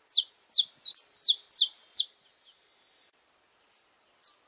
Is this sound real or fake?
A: real